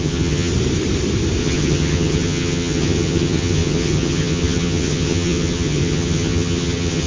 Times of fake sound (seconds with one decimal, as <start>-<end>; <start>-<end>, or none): 0.0-0.5; 1.4-7.1